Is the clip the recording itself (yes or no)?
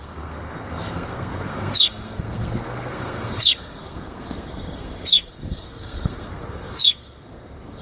no